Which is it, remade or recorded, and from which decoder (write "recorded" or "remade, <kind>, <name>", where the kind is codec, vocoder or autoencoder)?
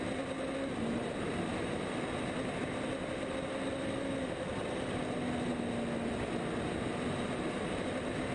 recorded